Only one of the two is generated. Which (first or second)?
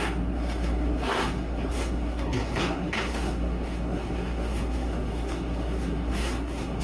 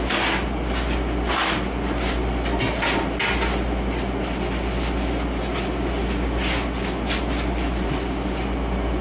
first